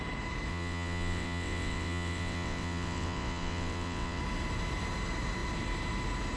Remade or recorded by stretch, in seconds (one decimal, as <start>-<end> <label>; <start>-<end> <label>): 0.0-0.5 recorded; 0.5-4.2 remade; 4.2-6.4 recorded